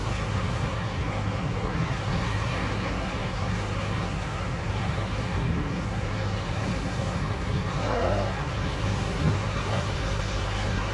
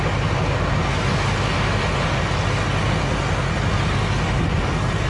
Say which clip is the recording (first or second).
second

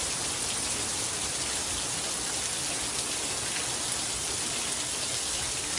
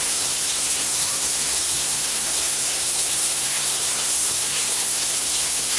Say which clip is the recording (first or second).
first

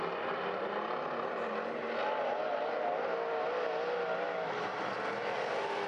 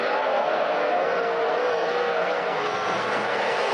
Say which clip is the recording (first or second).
first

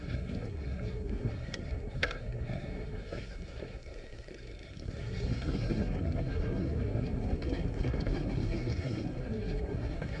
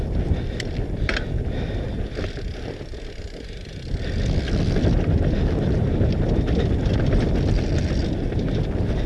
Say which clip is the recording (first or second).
second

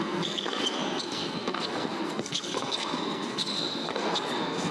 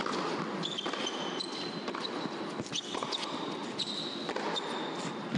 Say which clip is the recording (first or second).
second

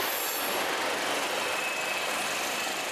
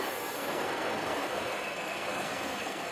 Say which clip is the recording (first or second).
first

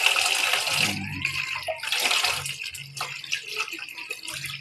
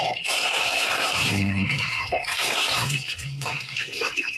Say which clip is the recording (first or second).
first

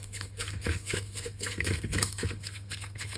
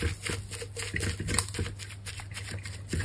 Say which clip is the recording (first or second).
second